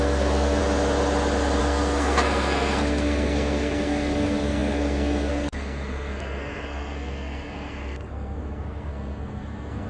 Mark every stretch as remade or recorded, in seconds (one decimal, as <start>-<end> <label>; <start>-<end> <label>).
0.0-0.6 remade; 0.6-1.6 recorded; 1.6-9.9 remade